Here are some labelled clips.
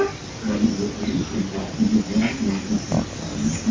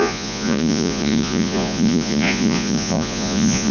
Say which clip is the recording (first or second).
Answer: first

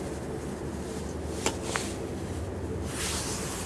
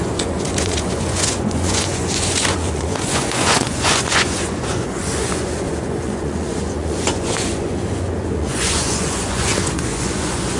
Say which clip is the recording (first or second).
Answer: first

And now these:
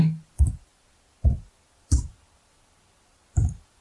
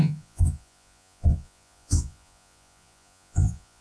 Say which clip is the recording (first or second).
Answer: first